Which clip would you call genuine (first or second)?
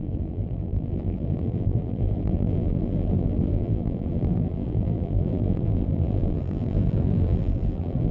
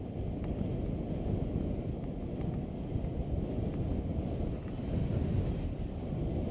second